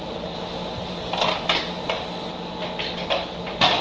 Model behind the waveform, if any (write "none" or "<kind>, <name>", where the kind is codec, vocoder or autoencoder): none